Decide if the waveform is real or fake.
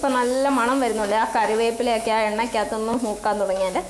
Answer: fake